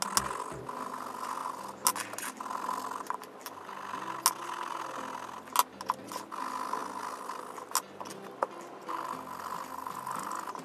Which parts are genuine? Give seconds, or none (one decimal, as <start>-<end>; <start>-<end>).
0.0-10.6